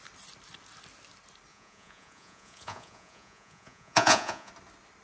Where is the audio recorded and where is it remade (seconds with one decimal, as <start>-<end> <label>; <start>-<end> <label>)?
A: 0.0-1.5 recorded; 1.5-4.5 remade; 4.5-5.0 recorded